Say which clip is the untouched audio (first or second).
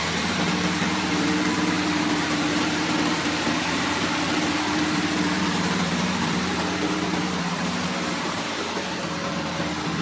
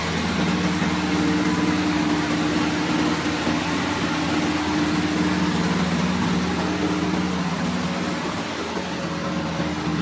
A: second